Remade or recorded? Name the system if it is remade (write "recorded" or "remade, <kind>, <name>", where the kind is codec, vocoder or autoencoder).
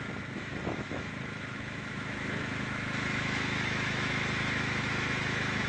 remade, autoencoder, DAC-VAE